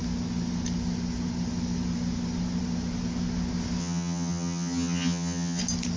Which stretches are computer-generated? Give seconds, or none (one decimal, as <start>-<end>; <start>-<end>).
3.8-5.6